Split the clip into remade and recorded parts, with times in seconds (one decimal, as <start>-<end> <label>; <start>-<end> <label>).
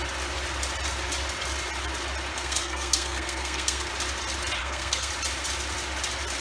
0.0-2.3 recorded; 2.3-3.9 remade; 3.9-4.6 recorded; 4.6-5.1 remade; 5.1-6.4 recorded